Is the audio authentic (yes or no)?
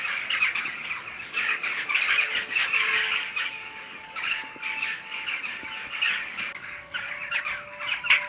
no